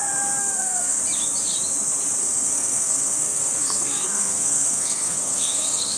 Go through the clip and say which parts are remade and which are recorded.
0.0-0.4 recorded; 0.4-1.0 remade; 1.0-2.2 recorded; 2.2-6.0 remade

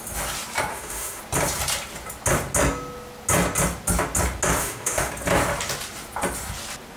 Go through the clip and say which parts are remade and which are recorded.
0.0-0.7 recorded; 0.7-1.2 remade; 1.2-4.6 recorded; 4.6-5.1 remade; 5.1-7.0 recorded

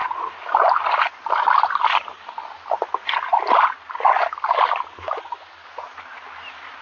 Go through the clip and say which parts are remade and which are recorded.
0.0-6.8 recorded

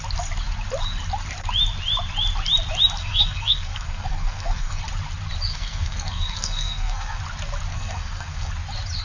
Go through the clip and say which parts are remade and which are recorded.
0.0-3.0 recorded; 3.0-4.8 remade; 4.8-5.5 recorded; 5.5-7.2 remade; 7.2-7.7 recorded; 7.7-8.5 remade; 8.5-9.0 recorded

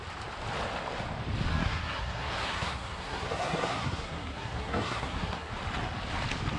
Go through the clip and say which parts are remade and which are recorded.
0.0-1.5 recorded; 1.5-5.5 remade; 5.5-6.6 recorded